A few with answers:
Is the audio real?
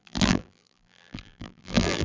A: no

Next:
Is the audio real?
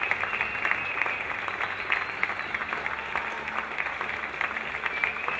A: yes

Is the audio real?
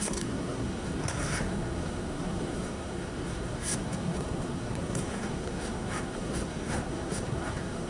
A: no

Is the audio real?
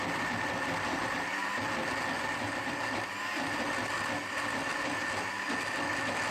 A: yes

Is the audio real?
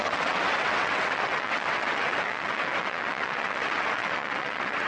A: no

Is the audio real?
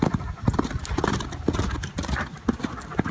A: yes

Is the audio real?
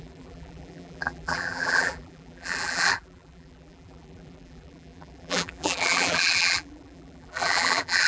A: no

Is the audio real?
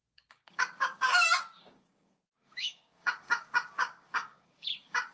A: no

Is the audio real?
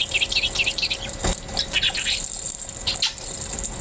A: yes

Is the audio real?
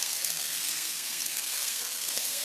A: no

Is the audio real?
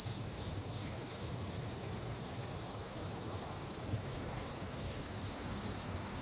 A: no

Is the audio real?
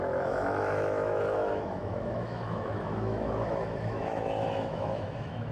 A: no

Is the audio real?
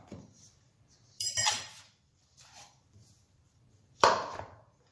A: no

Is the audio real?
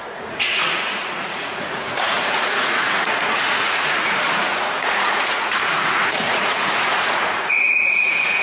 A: no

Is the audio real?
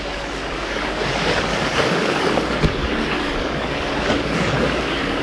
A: no